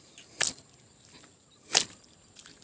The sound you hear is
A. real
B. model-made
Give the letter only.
A